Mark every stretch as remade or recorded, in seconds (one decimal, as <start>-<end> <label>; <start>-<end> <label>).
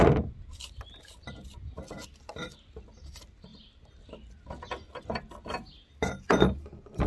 0.0-7.1 recorded